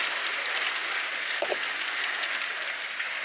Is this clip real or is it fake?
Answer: real